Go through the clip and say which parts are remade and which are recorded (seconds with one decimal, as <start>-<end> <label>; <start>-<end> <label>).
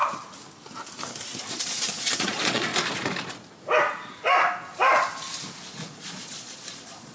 0.0-1.5 recorded; 1.5-2.7 remade; 2.7-5.6 recorded; 5.6-7.1 remade